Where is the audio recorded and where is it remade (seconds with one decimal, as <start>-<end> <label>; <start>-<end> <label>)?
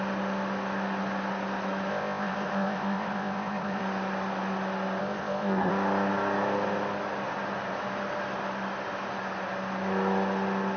0.0-1.9 recorded; 1.9-3.8 remade; 3.8-5.0 recorded; 5.0-5.7 remade; 5.7-10.8 recorded